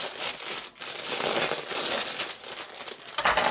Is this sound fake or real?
real